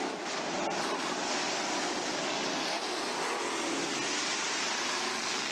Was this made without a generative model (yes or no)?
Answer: yes